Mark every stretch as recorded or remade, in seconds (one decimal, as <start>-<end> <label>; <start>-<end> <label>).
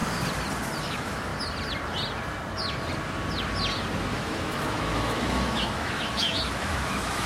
0.0-0.8 recorded; 0.8-1.3 remade; 1.3-4.1 recorded; 4.1-7.3 remade